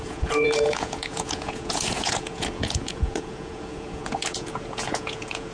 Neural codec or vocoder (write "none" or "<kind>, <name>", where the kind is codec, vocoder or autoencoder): vocoder, Vocos